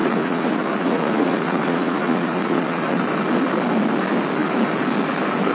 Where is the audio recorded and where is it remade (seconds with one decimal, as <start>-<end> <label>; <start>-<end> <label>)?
0.0-3.0 remade; 3.0-5.5 recorded